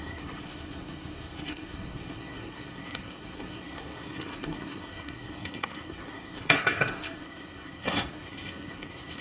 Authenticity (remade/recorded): remade